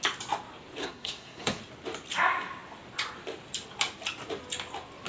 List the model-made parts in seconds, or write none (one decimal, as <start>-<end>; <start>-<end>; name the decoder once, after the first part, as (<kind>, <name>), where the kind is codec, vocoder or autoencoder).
0.8-1.6 (codec, SNAC)